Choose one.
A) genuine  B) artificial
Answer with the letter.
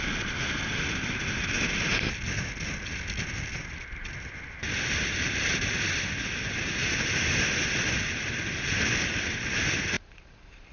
A